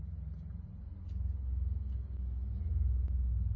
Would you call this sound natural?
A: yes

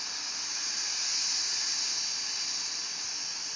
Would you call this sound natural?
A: yes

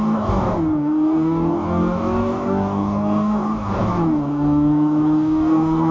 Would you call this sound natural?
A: no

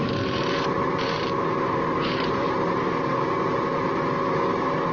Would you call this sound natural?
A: no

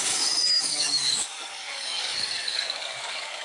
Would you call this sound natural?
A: no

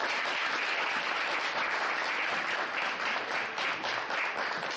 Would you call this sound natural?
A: yes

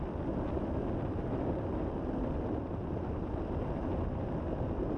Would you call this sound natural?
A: yes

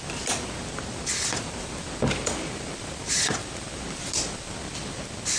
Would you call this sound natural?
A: yes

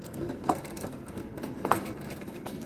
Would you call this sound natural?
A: no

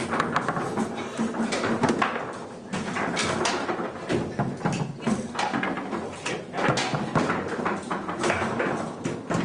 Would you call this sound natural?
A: yes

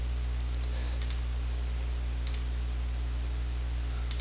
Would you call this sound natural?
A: yes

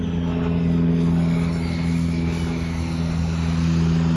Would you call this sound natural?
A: yes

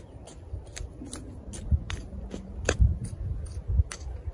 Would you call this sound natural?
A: yes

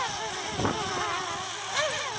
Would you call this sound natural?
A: yes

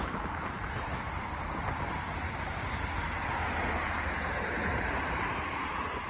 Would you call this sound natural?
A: yes